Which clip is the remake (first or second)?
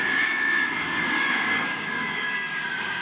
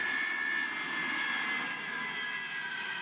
first